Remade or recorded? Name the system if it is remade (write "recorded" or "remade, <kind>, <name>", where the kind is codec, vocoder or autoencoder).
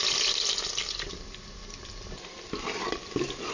recorded